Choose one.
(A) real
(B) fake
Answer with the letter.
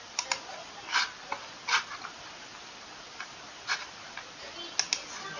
A